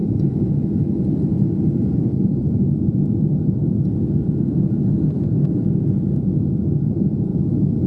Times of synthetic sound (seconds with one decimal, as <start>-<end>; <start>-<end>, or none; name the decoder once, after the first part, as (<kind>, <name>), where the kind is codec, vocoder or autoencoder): 0.0-0.5 (vocoder, BigVGAN v2)